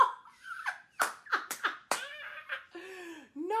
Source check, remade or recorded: recorded